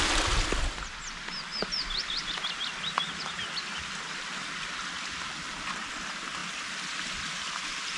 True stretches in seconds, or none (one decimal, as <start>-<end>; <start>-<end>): 0.0-8.0